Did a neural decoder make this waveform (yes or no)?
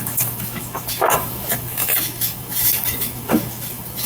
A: yes